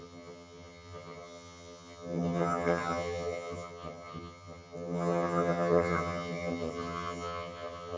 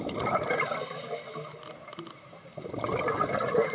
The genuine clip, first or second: second